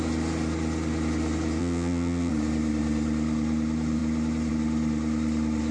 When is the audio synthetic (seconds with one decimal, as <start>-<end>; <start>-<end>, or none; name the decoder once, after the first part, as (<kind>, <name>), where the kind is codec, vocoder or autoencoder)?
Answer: 1.6-2.3 (vocoder, Vocos)